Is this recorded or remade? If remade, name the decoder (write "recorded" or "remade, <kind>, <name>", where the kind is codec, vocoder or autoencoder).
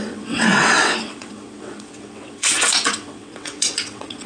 remade, vocoder, WaveNeXt